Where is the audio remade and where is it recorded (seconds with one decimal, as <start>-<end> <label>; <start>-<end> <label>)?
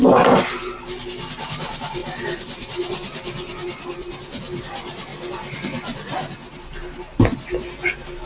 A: 0.0-8.3 recorded